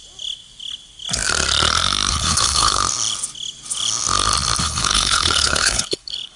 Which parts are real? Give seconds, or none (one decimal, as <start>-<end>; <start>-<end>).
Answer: 0.0-2.1; 2.8-4.6